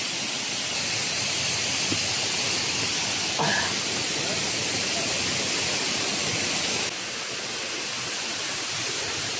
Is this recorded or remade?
recorded